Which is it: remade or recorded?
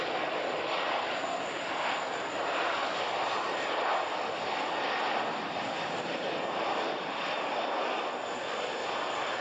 recorded